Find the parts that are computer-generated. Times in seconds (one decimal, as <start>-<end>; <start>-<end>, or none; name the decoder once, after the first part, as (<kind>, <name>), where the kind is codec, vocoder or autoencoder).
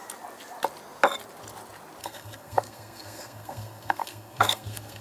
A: 2.0-5.0 (codec, SNAC)